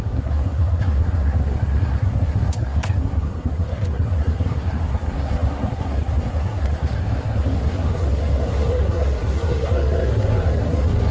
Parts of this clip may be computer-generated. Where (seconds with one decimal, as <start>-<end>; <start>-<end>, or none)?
0.0-11.1